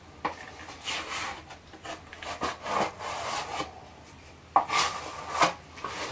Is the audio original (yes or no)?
yes